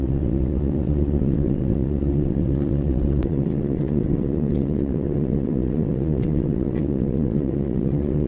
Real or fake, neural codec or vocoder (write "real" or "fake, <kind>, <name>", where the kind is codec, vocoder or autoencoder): fake, vocoder, WaveNeXt